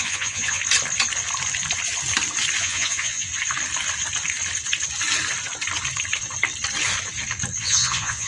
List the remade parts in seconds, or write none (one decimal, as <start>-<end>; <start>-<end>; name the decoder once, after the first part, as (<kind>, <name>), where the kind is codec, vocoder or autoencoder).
0.0-0.6 (vocoder, Vocos); 2.6-3.3; 7.6-8.3